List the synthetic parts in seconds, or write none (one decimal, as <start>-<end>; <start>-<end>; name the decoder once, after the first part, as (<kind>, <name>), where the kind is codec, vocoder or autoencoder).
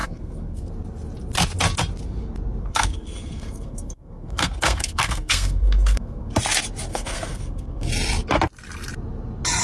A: 0.0-0.7 (codec, SNAC); 2.6-6.3; 6.9-7.9